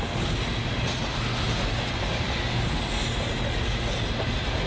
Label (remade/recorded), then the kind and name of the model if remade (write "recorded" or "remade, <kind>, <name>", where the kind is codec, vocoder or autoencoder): recorded